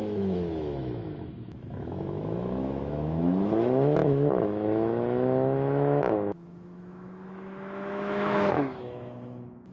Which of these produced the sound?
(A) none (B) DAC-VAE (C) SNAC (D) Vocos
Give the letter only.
B